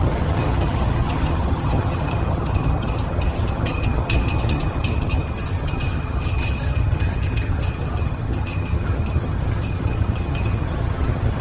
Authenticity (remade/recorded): remade